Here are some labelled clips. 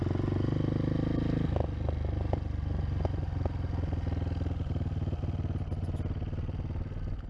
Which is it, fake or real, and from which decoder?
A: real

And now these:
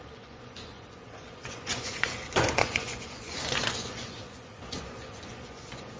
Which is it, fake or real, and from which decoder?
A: fake, vocoder, Vocos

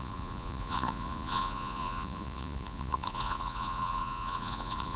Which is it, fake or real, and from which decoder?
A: fake, vocoder, Vocos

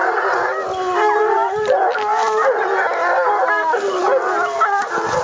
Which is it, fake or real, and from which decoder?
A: real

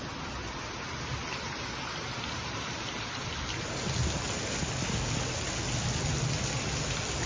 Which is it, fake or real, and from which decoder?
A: real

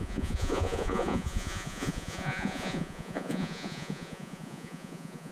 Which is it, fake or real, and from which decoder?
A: fake, vocoder, Vocos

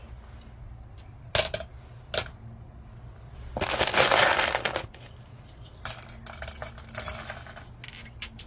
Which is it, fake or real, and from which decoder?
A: real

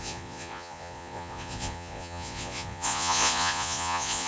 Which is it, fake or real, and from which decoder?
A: fake, vocoder, Vocos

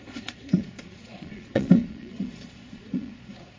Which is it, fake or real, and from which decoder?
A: fake, vocoder, Vocos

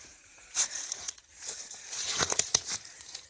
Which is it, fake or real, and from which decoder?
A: fake, vocoder, Vocos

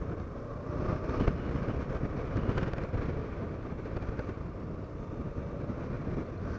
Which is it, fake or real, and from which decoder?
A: real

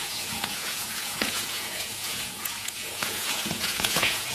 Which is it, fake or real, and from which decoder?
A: fake, vocoder, Vocos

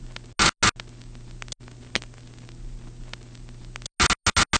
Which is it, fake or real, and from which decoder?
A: real